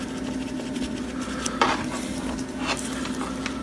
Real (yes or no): yes